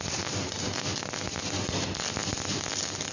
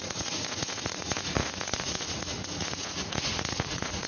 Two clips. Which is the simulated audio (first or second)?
second